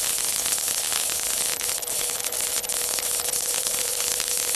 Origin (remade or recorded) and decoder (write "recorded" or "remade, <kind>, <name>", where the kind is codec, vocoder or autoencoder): remade, codec, HILCodec